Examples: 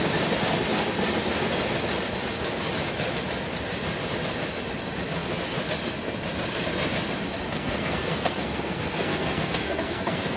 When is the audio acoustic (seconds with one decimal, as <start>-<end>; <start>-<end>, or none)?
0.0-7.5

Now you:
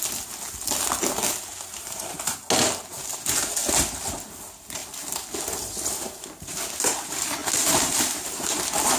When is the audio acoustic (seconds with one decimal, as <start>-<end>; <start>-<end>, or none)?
0.0-7.4; 8.6-9.0

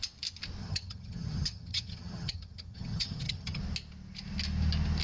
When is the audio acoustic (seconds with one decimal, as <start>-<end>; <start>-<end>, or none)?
0.0-0.6; 3.6-5.0

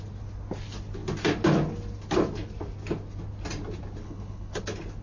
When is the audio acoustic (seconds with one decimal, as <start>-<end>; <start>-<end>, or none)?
0.0-4.0; 4.6-5.0

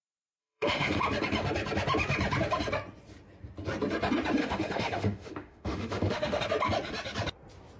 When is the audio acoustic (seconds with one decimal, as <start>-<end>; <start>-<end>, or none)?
0.0-0.4; 1.0-4.4; 6.4-7.8

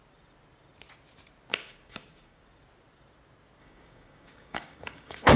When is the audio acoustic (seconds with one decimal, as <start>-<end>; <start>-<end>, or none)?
0.0-1.5; 2.4-3.6